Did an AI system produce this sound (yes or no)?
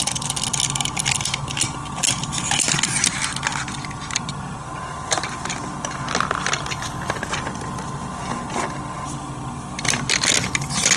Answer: no